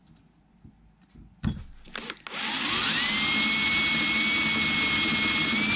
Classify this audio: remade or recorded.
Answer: recorded